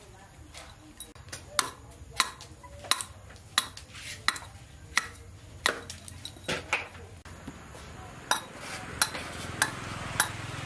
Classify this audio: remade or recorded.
recorded